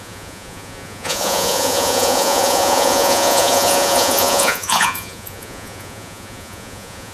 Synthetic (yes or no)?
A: yes